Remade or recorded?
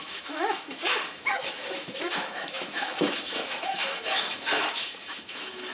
remade